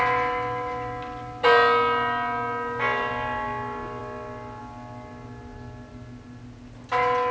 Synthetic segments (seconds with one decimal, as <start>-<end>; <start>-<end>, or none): none